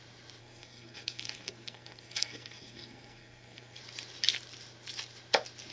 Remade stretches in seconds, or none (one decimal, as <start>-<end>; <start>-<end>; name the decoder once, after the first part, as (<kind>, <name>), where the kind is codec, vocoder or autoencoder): 0.4-3.8 (codec, SNAC)